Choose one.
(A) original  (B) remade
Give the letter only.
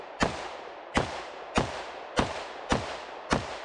B